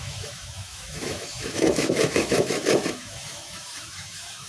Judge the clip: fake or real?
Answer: fake